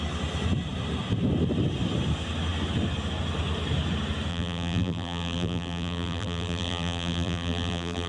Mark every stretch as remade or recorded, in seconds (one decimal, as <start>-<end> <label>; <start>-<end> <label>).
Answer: 0.0-4.3 recorded; 4.3-8.1 remade

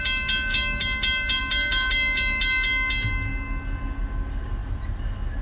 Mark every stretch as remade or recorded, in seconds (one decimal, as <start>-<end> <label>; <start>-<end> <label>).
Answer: 0.0-5.4 recorded

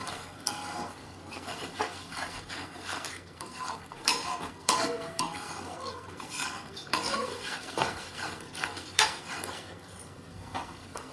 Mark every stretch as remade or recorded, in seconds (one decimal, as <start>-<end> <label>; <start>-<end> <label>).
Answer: 0.0-11.1 remade

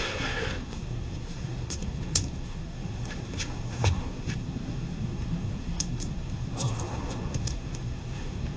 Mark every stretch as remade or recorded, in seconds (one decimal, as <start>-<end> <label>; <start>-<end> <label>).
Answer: 0.0-8.6 remade